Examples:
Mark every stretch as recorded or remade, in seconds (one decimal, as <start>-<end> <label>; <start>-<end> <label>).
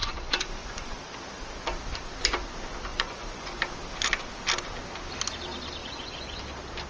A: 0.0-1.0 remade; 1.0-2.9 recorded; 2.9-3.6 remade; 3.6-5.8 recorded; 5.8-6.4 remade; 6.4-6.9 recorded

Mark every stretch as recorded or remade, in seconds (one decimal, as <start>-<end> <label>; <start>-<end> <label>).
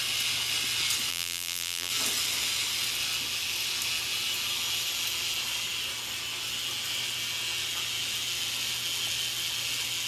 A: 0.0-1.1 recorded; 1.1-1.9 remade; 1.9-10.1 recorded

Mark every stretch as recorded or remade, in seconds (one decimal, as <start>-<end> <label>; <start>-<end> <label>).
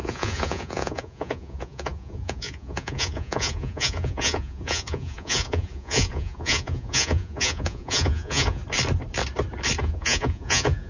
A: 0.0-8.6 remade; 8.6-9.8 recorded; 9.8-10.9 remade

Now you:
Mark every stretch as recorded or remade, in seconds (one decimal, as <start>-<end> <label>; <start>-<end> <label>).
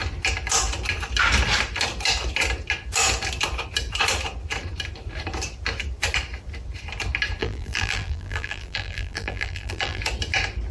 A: 0.0-7.4 recorded; 7.4-10.0 remade; 10.0-10.7 recorded